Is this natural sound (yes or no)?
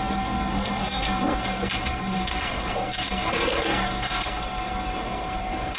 no